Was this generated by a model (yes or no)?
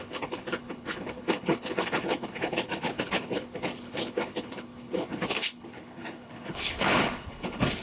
yes